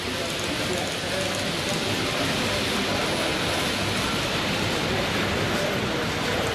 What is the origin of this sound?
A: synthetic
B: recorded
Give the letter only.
B